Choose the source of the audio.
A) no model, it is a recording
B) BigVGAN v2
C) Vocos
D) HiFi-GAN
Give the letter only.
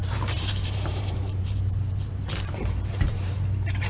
B